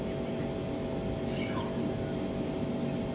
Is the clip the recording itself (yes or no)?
yes